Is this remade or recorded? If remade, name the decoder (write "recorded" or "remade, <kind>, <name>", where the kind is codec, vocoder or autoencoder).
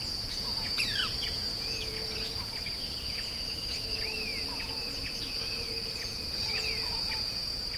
remade, vocoder, Vocos